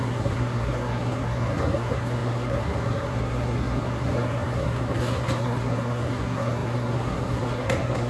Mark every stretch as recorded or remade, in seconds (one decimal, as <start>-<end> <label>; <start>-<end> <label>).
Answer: 0.0-8.1 remade